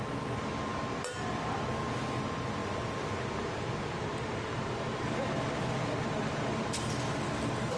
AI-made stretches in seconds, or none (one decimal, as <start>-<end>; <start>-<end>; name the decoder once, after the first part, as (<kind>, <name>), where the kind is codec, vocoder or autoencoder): 2.6-7.0 (vocoder, BigVGAN v2)